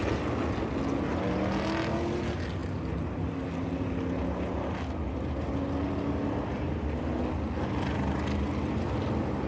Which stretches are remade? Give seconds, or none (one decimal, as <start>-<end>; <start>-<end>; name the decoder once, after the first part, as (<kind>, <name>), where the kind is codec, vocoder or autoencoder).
none